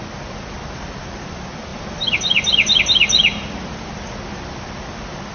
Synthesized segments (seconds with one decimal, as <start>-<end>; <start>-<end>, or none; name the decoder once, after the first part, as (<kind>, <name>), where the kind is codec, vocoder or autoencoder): none